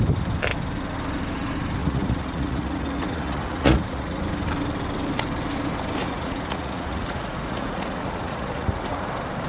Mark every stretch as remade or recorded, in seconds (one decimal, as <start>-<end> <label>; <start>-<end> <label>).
0.0-1.8 recorded; 1.8-4.2 remade; 4.2-6.0 recorded; 6.0-9.1 remade; 9.1-9.5 recorded